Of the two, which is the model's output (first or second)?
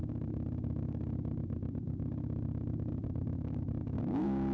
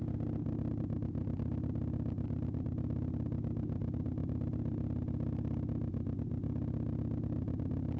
first